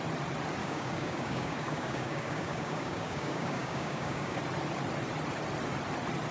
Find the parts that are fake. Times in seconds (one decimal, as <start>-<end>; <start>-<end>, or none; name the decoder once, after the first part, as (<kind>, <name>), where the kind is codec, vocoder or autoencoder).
0.6-4.4 (codec, DAC)

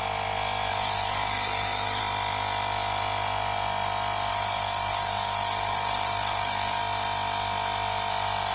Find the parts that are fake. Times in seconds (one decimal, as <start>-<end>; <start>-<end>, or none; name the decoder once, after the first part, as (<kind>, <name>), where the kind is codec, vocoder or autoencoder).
0.7-2.0 (codec, DAC); 4.3-6.8